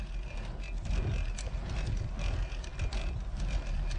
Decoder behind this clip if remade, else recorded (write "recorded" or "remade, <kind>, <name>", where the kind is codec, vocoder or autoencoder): recorded